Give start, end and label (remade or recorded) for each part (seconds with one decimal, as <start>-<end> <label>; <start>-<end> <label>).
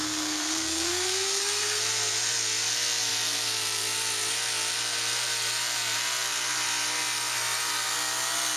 0.0-1.8 remade; 1.8-8.6 recorded